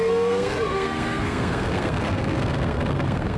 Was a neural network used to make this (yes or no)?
yes